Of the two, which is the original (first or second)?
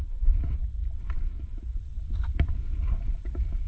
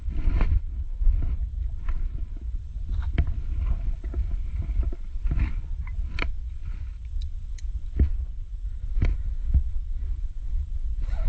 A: first